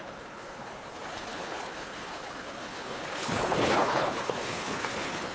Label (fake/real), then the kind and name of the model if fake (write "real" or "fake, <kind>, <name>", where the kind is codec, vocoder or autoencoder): fake, codec, HILCodec